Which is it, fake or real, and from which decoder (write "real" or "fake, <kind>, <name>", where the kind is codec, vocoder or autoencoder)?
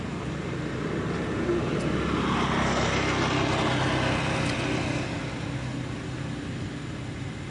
real